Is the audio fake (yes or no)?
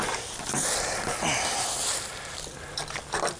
no